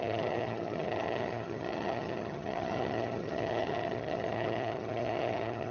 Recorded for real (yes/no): no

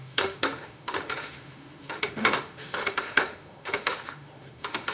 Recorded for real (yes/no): no